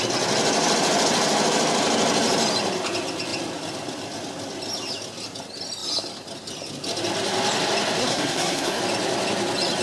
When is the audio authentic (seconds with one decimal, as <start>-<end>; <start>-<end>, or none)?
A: 0.0-8.0; 8.8-9.8